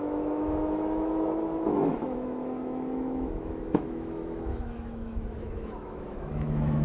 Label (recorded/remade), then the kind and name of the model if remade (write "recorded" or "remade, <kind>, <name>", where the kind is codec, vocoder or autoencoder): remade, autoencoder, DAC-VAE